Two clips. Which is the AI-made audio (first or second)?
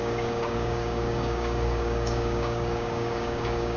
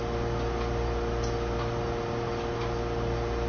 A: first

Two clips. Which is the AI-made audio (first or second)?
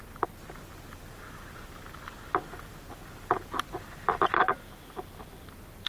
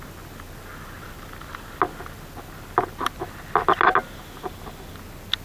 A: first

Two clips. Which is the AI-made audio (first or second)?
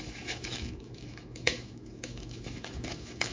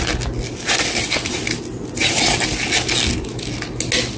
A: first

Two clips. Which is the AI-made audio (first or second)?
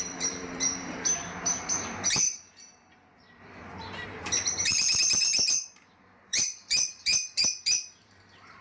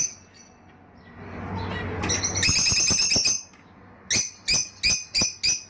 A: first